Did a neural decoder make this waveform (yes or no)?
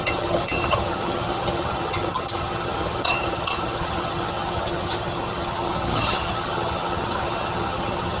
yes